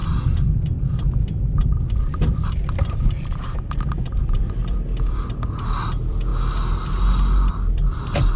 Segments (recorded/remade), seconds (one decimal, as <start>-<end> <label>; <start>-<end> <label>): 0.0-6.3 remade; 6.3-7.5 recorded; 7.5-8.4 remade